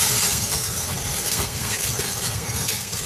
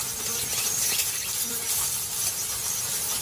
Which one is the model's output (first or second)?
first